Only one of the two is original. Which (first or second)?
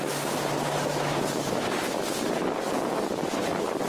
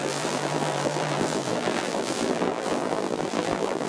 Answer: first